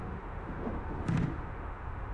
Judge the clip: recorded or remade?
remade